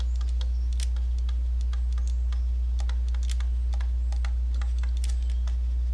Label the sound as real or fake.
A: real